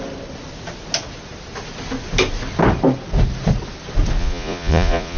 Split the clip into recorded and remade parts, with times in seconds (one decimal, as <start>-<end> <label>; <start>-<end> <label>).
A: 0.0-4.2 recorded; 4.2-5.2 remade